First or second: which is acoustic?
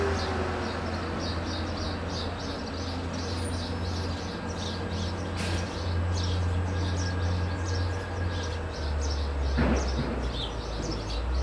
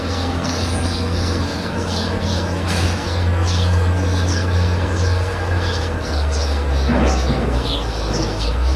first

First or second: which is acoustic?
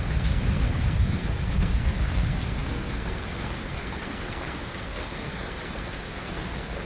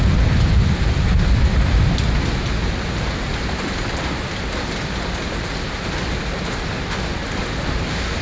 second